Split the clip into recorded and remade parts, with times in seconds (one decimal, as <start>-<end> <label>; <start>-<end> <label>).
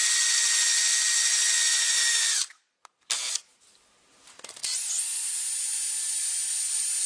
0.0-7.1 recorded